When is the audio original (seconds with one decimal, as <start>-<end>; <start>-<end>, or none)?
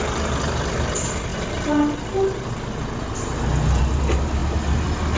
0.0-5.2